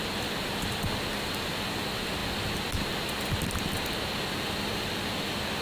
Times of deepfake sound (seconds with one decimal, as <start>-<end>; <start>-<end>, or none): 0.0-2.2; 4.3-5.6